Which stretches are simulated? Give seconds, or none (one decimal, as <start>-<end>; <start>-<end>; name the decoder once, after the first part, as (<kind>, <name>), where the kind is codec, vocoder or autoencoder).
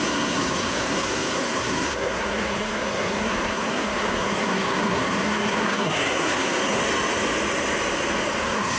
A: 0.0-6.8 (codec, SNAC); 8.4-8.8